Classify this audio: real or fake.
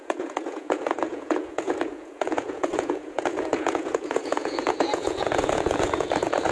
fake